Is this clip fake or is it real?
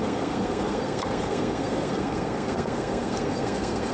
fake